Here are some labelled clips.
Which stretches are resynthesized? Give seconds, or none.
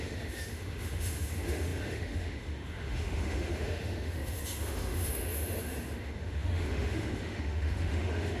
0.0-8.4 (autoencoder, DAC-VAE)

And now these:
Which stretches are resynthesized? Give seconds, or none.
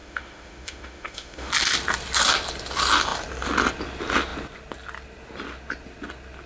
0.0-1.5 (autoencoder, DAC-VAE)